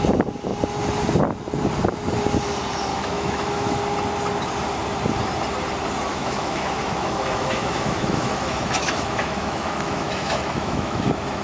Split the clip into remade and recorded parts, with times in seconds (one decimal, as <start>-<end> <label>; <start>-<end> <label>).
0.0-2.9 recorded; 2.9-3.8 remade; 3.8-6.1 recorded; 6.1-11.0 remade; 11.0-11.4 recorded